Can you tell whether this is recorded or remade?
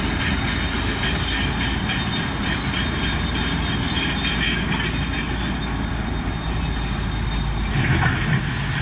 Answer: recorded